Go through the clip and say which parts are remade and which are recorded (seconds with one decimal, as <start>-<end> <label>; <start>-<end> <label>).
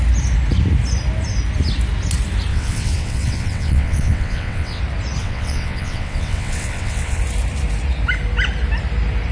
0.0-2.5 recorded; 2.5-4.8 remade; 4.8-5.2 recorded; 5.2-7.2 remade; 7.2-9.3 recorded